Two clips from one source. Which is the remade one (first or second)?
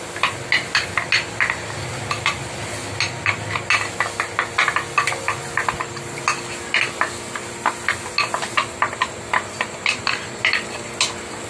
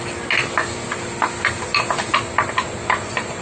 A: second